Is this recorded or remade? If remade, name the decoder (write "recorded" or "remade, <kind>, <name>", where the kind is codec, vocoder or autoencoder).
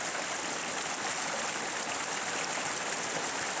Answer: recorded